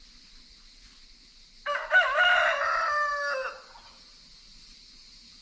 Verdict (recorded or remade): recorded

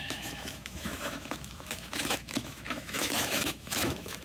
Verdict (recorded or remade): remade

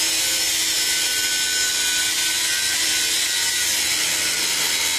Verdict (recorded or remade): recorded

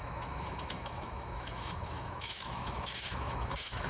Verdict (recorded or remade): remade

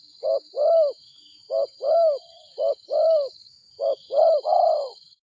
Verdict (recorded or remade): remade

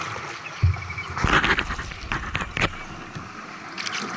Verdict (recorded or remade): recorded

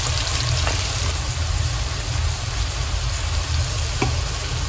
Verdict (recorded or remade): recorded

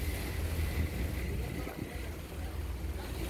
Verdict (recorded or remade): recorded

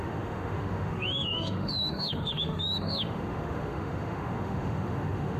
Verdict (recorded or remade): remade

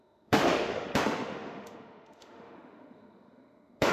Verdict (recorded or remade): remade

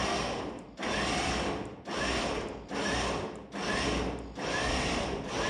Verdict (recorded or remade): recorded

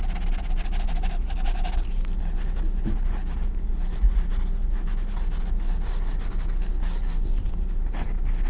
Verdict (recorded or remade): recorded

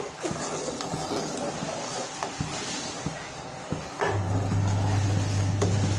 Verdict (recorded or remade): recorded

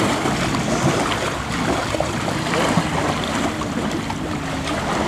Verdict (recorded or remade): recorded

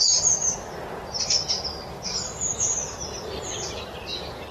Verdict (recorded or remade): recorded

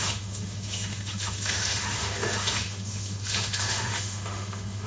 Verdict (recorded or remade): remade